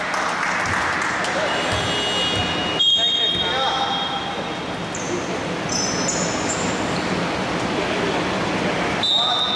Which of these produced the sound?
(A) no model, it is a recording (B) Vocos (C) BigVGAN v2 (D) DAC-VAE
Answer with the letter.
A